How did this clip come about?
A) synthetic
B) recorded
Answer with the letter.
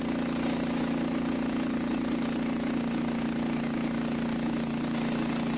B